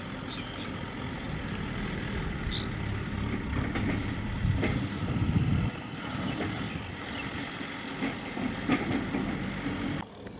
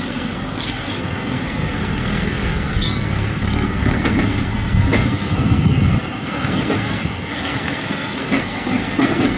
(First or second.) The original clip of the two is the first